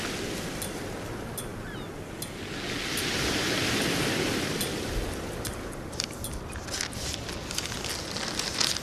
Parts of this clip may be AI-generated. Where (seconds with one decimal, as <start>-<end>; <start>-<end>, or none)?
none